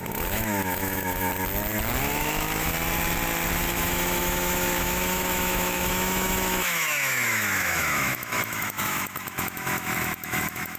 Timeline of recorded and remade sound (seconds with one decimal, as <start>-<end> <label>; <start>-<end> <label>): 0.0-1.3 remade; 1.3-2.0 recorded; 2.0-2.7 remade; 2.7-3.7 recorded; 3.7-10.8 remade